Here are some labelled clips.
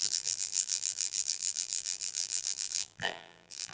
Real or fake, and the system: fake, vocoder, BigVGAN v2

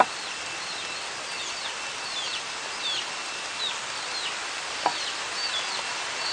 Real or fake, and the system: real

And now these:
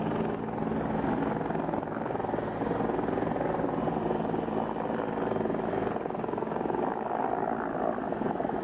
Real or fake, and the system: real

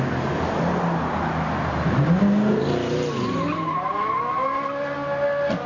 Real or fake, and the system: real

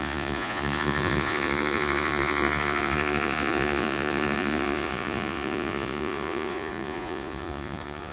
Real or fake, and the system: fake, vocoder, Vocos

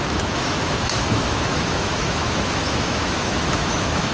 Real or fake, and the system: fake, autoencoder, DAC-VAE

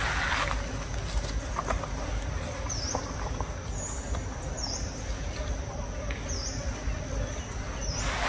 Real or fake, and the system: real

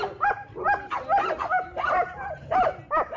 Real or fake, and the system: real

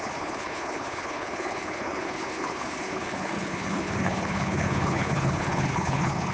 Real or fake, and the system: fake, codec, HILCodec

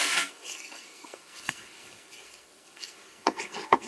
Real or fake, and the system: fake, codec, SNAC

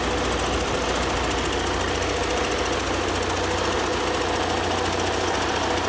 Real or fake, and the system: real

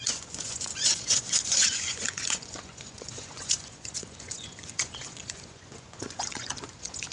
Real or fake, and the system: fake, vocoder, Vocos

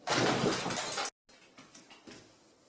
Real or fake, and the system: real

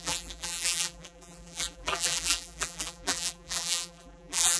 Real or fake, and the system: fake, vocoder, BigVGAN v2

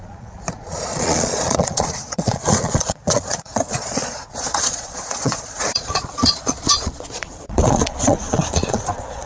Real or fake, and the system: fake, vocoder, Vocos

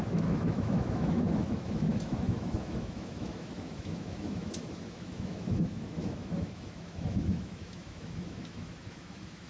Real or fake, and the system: fake, autoencoder, DAC-VAE